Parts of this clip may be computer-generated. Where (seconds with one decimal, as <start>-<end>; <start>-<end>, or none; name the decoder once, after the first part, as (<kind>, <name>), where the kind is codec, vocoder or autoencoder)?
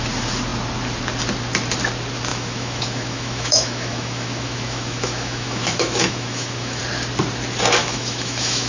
2.3-6.8 (autoencoder, DAC-VAE); 7.8-8.7